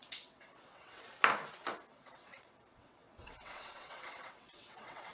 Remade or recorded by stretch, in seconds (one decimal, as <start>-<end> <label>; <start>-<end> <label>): 0.0-1.0 remade; 1.0-1.9 recorded; 1.9-5.1 remade